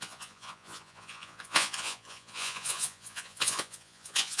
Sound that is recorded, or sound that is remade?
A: remade